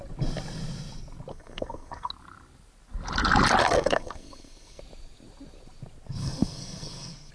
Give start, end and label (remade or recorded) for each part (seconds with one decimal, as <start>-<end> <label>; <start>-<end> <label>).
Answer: 0.0-1.3 recorded; 1.3-2.1 remade; 2.1-3.6 recorded; 3.6-4.8 remade; 4.8-6.2 recorded; 6.2-7.3 remade